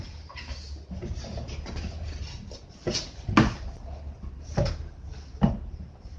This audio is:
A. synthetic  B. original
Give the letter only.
B